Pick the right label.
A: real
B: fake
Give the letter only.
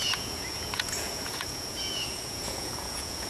B